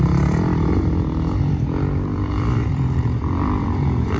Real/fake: fake